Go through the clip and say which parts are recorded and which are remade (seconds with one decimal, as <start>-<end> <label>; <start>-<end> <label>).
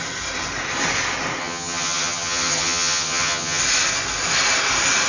0.0-1.4 recorded; 1.4-3.6 remade; 3.6-5.1 recorded